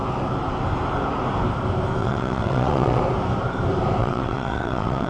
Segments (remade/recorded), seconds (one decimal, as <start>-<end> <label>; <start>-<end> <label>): 0.0-2.0 recorded; 2.0-3.0 remade; 3.0-4.0 recorded; 4.0-5.1 remade